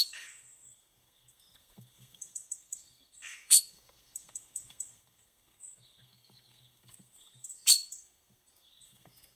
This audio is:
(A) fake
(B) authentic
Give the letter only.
A